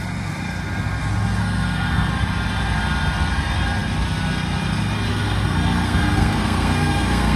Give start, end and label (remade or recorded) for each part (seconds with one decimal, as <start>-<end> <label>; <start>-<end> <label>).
0.0-1.4 recorded; 1.4-2.1 remade; 2.1-5.1 recorded; 5.1-7.4 remade